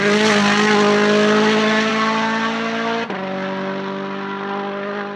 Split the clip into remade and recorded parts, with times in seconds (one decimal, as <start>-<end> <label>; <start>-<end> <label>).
0.0-5.2 recorded